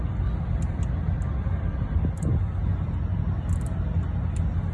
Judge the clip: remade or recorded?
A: recorded